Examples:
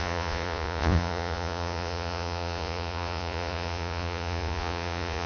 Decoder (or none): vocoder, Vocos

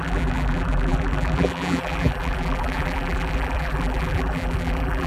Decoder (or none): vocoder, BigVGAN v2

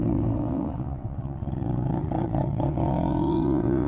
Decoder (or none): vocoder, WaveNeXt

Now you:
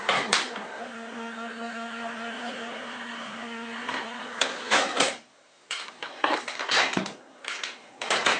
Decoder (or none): codec, SNAC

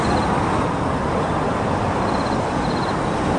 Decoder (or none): none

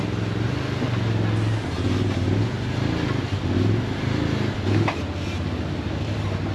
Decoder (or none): none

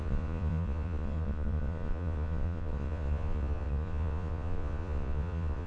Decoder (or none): vocoder, Vocos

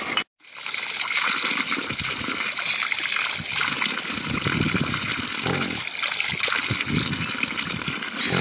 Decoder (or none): none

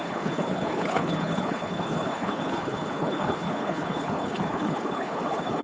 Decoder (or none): codec, HILCodec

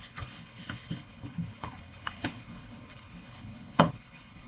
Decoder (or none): codec, HILCodec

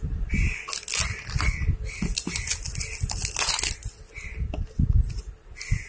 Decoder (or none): none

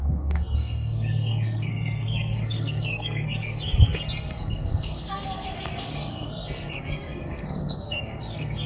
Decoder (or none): codec, SNAC